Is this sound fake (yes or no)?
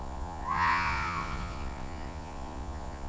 yes